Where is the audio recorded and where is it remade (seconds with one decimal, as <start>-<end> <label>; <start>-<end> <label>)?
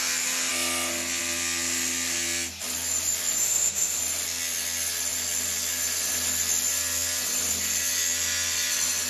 0.0-3.4 recorded; 3.4-4.0 remade; 4.0-9.1 recorded